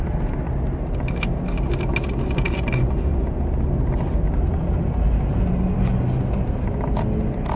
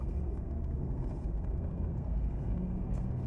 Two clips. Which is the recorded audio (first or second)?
first